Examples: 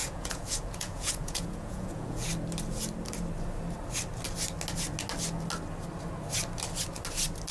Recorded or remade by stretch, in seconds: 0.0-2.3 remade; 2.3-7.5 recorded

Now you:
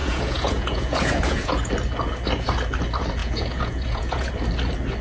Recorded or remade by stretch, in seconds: 0.0-1.7 remade; 1.7-3.2 recorded; 3.2-4.3 remade; 4.3-5.0 recorded